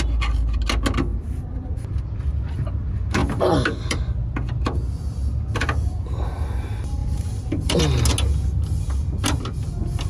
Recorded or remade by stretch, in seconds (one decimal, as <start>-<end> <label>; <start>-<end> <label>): 0.0-1.1 recorded; 1.1-2.0 remade; 2.0-3.2 recorded; 3.2-4.0 remade; 4.0-7.0 recorded; 7.0-7.8 remade; 7.8-10.1 recorded

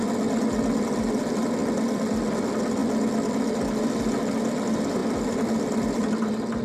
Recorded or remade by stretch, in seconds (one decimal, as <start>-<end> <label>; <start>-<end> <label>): 0.0-6.6 recorded

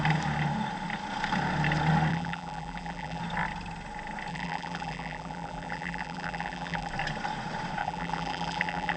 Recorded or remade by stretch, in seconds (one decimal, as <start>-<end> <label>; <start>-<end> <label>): 0.0-2.1 recorded; 2.1-3.2 remade; 3.2-4.3 recorded; 4.3-6.9 remade; 6.9-7.8 recorded; 7.8-9.0 remade

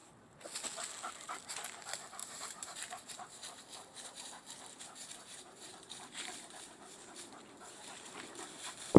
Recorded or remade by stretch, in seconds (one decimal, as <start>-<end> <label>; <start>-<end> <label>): 0.0-1.1 recorded; 1.1-9.0 remade

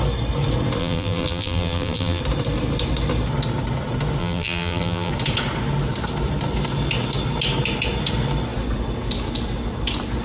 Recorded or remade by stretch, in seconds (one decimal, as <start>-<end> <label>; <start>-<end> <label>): 0.0-0.8 recorded; 0.8-2.2 remade; 2.2-4.2 recorded; 4.2-5.1 remade; 5.1-10.2 recorded

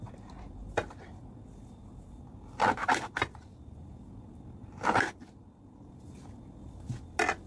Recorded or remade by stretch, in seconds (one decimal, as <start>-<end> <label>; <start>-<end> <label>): 0.0-7.5 recorded

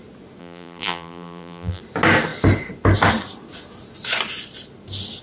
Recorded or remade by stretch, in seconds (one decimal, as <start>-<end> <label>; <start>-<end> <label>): 0.0-0.4 recorded; 0.4-1.8 remade; 1.8-5.2 recorded